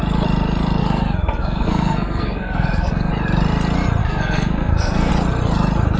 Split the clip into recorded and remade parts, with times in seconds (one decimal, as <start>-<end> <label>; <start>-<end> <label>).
0.0-0.8 recorded; 0.8-3.1 remade; 3.1-4.0 recorded; 4.0-5.1 remade; 5.1-6.0 recorded